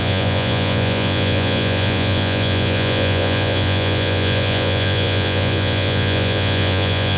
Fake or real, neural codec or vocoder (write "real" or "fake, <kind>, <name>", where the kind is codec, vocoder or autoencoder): fake, vocoder, Vocos